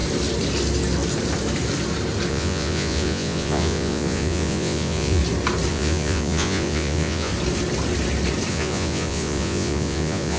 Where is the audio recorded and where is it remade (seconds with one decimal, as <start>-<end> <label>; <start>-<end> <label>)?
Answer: 0.0-2.3 recorded; 2.3-5.2 remade; 5.2-5.7 recorded; 5.7-7.3 remade; 7.3-8.5 recorded; 8.5-10.4 remade